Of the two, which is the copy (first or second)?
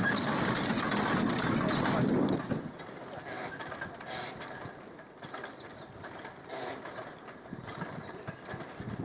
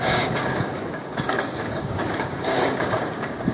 second